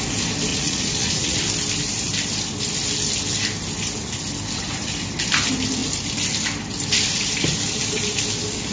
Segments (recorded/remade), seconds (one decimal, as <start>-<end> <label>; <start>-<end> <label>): 0.0-0.5 recorded; 0.5-1.4 remade; 1.4-8.7 recorded